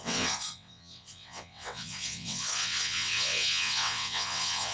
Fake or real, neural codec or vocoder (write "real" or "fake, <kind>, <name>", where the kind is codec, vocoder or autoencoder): fake, vocoder, WaveNeXt